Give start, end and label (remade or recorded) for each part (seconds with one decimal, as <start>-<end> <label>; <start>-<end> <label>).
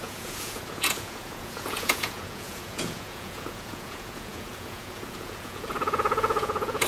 0.0-6.9 remade